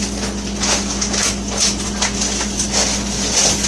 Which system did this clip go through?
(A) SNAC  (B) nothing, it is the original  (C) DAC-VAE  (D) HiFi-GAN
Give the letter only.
B